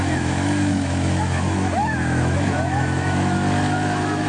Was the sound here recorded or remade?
remade